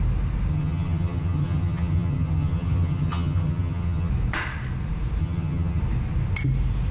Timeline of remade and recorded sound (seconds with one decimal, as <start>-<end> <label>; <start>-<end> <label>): 0.0-0.5 recorded; 0.5-4.1 remade; 4.1-5.2 recorded; 5.2-5.8 remade; 5.8-6.9 recorded